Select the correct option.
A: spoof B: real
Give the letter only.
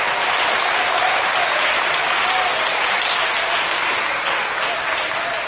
B